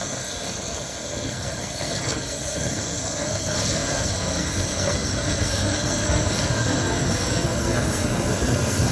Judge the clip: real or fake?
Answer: fake